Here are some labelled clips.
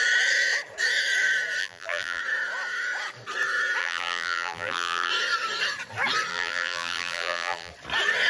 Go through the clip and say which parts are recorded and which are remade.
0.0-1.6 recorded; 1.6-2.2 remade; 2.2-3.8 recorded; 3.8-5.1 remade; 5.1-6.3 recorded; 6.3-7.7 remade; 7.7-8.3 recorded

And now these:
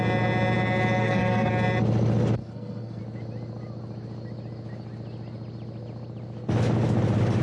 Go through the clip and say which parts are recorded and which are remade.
0.0-1.0 recorded; 1.0-1.5 remade; 1.5-2.4 recorded; 2.4-3.0 remade; 3.0-7.4 recorded

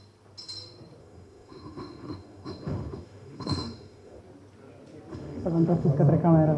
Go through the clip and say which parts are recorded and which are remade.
0.0-1.0 recorded; 1.0-4.2 remade; 4.2-5.1 recorded; 5.1-5.9 remade; 5.9-6.6 recorded

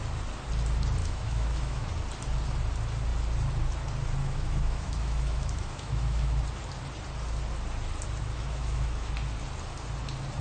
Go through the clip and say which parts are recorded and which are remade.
0.0-1.0 recorded; 1.0-1.9 remade; 1.9-4.2 recorded; 4.2-6.4 remade; 6.4-8.3 recorded; 8.3-9.1 remade; 9.1-10.4 recorded